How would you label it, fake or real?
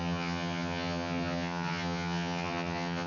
fake